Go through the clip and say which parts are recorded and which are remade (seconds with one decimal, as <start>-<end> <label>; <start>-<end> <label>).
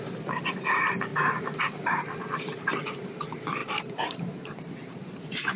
0.0-1.1 recorded; 1.1-3.1 remade; 3.1-3.6 recorded; 3.6-5.6 remade